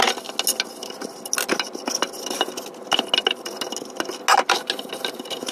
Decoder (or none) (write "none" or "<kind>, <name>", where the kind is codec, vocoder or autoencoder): none